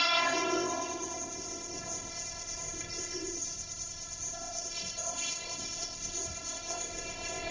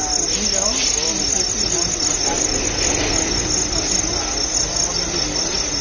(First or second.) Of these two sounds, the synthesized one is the first